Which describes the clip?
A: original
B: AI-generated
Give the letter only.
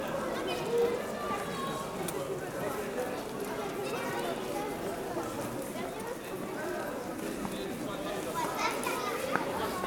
A